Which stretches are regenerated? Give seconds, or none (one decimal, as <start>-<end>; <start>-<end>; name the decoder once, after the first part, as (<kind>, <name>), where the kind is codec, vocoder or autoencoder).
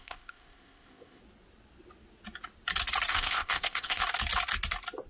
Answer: 0.0-1.2 (codec, ZipCodec); 3.1-4.0